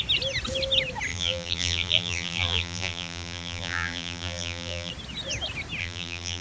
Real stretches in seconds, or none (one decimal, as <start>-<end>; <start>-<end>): 0.0-1.1; 4.9-5.8

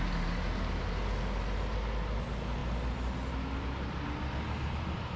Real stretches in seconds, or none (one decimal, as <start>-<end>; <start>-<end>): 0.0-5.2

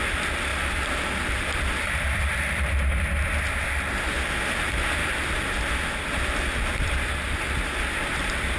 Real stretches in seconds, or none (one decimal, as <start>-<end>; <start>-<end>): 0.0-0.5; 2.9-8.6